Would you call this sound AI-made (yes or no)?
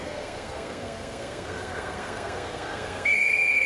yes